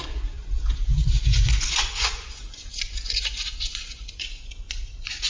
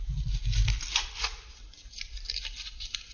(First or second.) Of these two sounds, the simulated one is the first